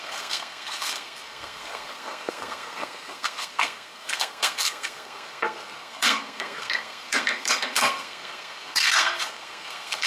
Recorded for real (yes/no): no